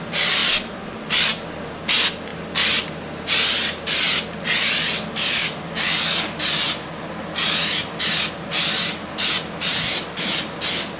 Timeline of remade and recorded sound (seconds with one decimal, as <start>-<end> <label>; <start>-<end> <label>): 0.0-11.0 recorded